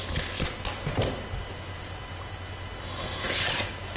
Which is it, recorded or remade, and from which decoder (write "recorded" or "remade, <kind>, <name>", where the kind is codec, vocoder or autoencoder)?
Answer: recorded